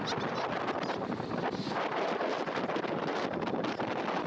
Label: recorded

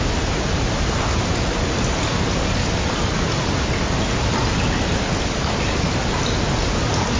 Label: recorded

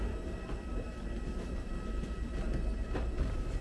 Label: recorded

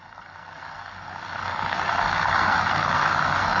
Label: remade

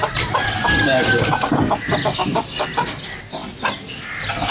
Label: recorded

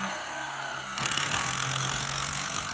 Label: remade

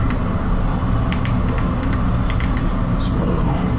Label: recorded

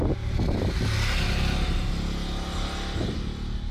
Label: recorded